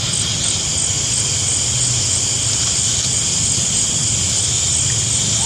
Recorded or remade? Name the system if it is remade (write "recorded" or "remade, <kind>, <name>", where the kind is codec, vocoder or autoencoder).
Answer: recorded